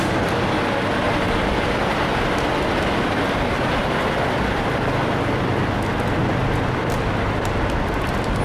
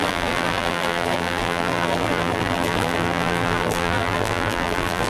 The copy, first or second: second